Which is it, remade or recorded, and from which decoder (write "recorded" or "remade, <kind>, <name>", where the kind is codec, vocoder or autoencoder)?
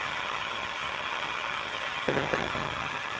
remade, vocoder, HiFi-GAN